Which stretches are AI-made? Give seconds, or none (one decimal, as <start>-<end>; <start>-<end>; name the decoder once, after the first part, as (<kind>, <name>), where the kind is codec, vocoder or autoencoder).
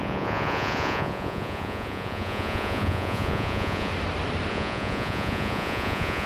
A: 0.0-3.9 (vocoder, Vocos); 4.5-6.3